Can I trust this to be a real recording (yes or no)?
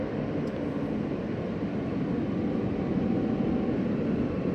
yes